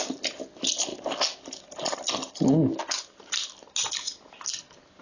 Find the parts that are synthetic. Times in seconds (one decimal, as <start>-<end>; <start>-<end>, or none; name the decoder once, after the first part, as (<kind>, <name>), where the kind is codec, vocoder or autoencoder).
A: none